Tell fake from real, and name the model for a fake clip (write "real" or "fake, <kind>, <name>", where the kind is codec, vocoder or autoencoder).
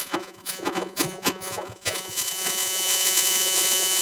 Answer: fake, vocoder, Vocos